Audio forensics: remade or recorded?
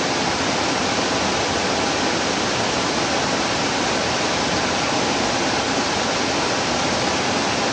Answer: recorded